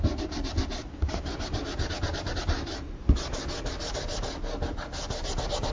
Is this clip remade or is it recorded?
recorded